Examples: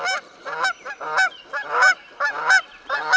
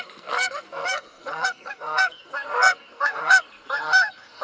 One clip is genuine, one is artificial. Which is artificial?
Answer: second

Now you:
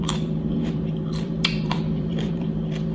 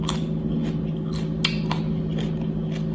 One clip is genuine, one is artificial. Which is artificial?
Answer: first